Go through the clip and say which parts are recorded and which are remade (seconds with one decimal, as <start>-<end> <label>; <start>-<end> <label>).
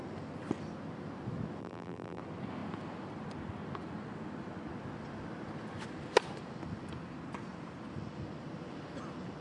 0.0-1.6 recorded; 1.6-2.2 remade; 2.2-9.4 recorded